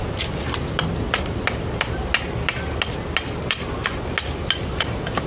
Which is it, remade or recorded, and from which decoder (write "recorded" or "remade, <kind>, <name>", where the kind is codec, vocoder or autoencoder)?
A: recorded